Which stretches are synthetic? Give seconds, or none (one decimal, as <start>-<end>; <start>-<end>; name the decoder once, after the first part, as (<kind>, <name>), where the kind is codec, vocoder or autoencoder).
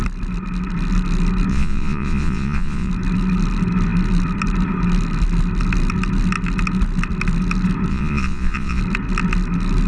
1.5-2.9 (vocoder, Vocos); 7.9-8.8